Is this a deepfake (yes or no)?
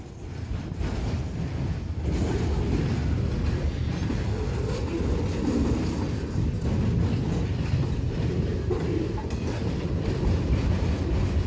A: no